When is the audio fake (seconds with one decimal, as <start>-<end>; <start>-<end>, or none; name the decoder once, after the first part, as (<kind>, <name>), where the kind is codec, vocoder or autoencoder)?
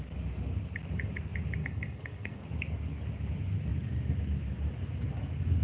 1.6-2.4 (codec, SNAC)